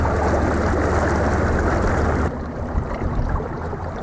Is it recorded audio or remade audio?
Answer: recorded